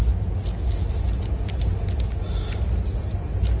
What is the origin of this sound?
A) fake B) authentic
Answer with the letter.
B